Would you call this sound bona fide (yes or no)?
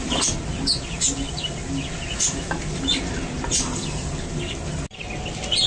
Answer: yes